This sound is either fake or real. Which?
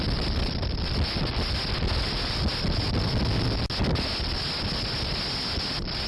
real